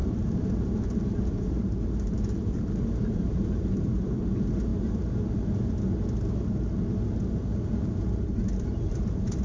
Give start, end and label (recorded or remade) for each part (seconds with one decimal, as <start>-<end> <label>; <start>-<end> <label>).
0.0-4.7 remade; 4.7-7.4 recorded; 7.4-9.4 remade